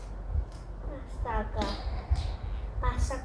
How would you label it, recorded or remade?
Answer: recorded